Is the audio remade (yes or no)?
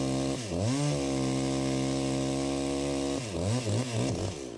no